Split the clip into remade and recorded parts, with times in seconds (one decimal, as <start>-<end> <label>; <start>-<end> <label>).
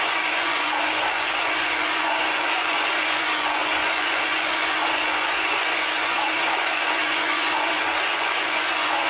0.0-9.1 remade